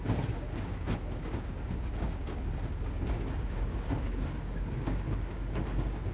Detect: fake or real fake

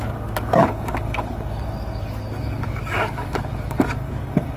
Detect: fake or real fake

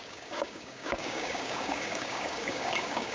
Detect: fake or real fake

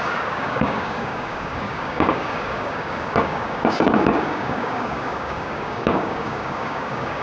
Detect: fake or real fake